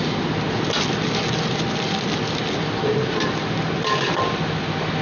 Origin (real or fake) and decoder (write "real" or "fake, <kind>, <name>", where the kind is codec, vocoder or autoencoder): real